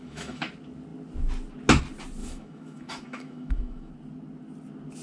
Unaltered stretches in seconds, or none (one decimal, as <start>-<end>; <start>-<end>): 0.5-2.2; 3.9-5.0